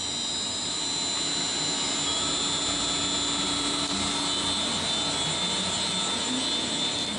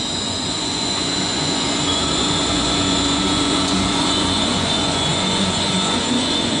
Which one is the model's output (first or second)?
second